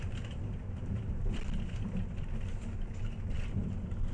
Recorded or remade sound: recorded